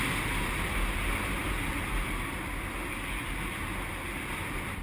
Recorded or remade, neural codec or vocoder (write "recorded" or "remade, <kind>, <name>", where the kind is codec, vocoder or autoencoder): recorded